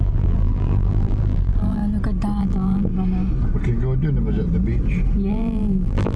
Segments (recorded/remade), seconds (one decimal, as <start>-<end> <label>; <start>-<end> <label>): 0.0-1.8 remade; 1.8-2.4 recorded; 2.4-2.9 remade; 2.9-5.3 recorded; 5.3-6.2 remade